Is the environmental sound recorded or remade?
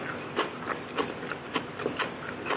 recorded